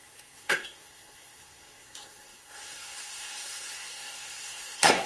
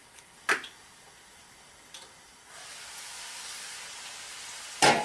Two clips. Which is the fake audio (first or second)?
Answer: first